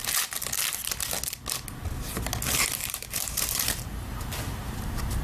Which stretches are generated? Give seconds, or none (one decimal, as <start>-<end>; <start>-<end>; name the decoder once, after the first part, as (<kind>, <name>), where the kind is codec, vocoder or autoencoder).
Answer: 2.8-4.4 (vocoder, BigVGAN v2)